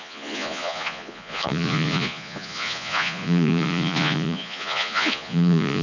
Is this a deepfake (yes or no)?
yes